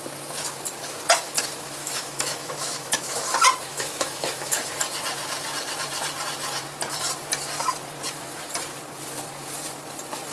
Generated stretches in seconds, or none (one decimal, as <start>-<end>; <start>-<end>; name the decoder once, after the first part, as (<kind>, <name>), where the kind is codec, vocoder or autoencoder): 1.8-3.2 (autoencoder, DAC-VAE); 3.7-4.7